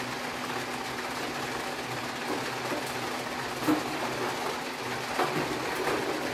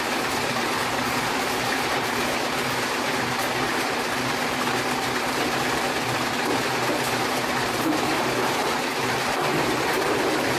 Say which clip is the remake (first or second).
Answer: second